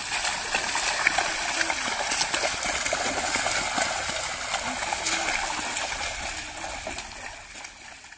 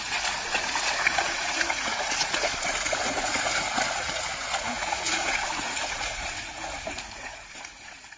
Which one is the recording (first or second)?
first